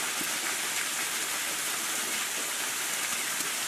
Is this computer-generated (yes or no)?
no